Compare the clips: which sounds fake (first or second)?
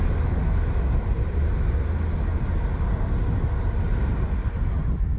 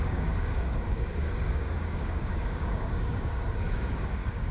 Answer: second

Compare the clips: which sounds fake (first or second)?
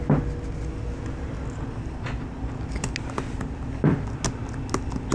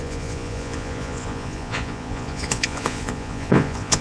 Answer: second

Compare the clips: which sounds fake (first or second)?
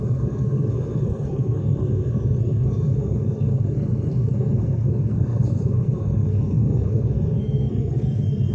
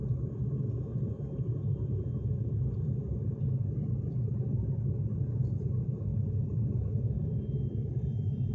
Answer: first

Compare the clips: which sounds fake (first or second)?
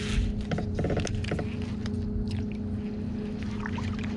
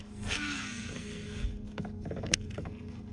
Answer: second